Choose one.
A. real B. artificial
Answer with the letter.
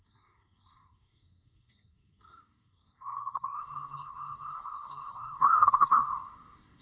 B